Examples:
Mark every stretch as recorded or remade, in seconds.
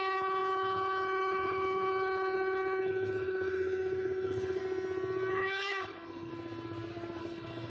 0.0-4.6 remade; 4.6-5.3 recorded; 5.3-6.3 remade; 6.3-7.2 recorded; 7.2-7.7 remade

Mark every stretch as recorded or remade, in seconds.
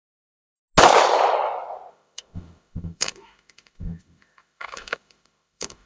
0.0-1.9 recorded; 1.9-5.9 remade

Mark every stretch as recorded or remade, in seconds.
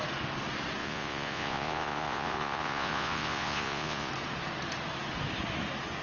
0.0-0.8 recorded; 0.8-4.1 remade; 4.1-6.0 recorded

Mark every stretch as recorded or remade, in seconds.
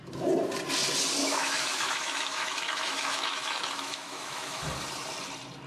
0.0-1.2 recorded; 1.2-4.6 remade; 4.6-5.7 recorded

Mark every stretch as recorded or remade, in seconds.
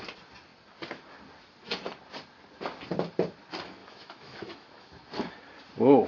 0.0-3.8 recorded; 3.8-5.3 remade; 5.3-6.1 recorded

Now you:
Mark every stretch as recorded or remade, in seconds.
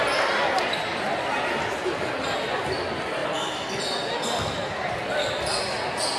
0.0-6.2 recorded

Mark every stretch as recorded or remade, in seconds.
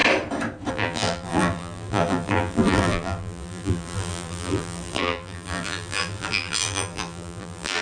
0.0-0.7 recorded; 0.7-7.8 remade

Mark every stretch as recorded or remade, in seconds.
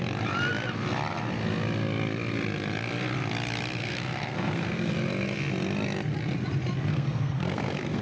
0.0-3.8 recorded; 3.8-4.9 remade; 4.9-6.9 recorded; 6.9-8.0 remade